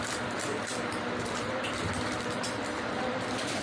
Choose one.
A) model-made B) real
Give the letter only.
A